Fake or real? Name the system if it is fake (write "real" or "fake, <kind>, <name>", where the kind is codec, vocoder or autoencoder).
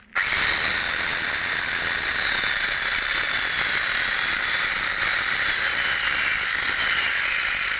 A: real